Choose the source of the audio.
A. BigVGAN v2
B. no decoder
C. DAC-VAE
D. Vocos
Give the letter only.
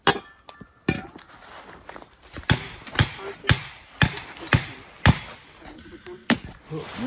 B